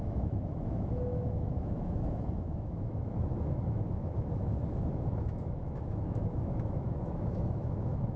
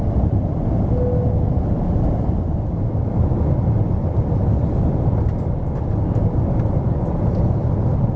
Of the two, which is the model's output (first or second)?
first